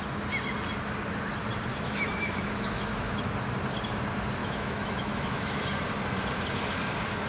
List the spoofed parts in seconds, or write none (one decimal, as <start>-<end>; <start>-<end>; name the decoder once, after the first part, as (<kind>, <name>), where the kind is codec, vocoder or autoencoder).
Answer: 1.7-3.3 (autoencoder, DAC-VAE); 4.4-5.5